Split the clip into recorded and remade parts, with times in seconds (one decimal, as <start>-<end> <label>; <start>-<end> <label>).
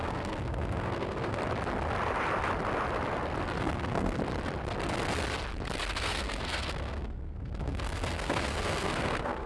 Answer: 0.0-1.4 remade; 1.4-3.6 recorded; 3.6-4.2 remade; 4.2-5.9 recorded; 5.9-9.5 remade